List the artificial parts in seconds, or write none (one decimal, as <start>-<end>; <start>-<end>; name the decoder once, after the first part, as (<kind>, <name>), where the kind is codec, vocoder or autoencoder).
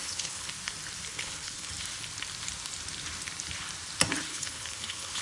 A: 0.0-0.5 (codec, HILCodec); 1.1-1.7; 4.3-5.2